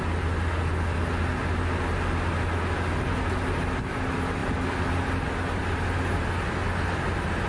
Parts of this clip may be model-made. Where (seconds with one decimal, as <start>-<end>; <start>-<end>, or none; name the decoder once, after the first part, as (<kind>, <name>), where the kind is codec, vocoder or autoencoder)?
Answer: none